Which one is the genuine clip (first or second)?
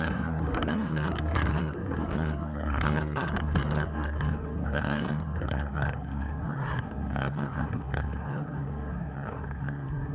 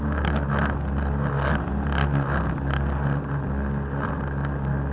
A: second